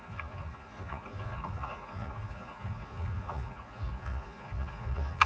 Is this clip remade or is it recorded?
remade